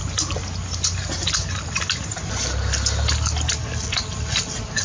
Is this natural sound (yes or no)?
yes